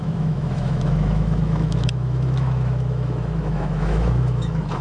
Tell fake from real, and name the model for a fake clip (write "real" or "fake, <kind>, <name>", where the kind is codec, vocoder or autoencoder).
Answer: fake, autoencoder, DAC-VAE